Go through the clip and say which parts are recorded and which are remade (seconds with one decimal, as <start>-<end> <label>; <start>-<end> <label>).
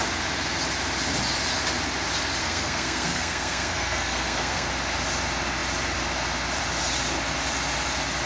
0.0-2.4 recorded; 2.4-4.7 remade; 4.7-8.3 recorded